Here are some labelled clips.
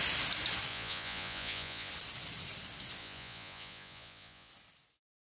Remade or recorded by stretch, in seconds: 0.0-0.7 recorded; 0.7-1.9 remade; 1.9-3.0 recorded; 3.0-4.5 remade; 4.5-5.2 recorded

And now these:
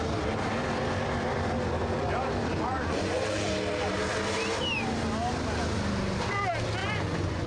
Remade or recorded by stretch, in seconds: 0.0-2.7 recorded; 2.7-3.5 remade; 3.5-6.8 recorded; 6.8-7.5 remade

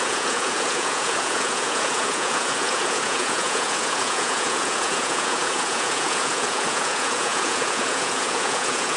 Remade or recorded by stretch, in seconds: 0.0-9.0 remade

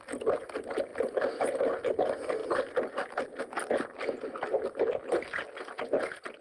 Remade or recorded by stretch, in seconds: 0.0-6.4 recorded

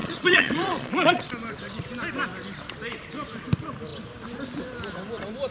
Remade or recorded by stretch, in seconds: 0.0-1.3 remade; 1.3-5.5 recorded